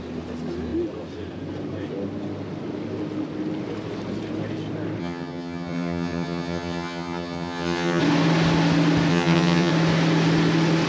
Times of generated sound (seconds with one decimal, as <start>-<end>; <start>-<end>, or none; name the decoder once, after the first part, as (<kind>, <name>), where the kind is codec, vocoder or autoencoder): 5.0-8.0 (vocoder, HiFi-GAN); 9.1-9.7